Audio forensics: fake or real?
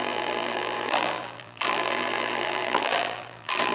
fake